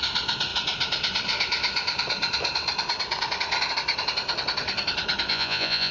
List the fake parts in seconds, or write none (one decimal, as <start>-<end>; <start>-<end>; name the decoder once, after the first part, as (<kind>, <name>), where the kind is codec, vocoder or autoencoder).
5.3-5.9 (vocoder, Vocos)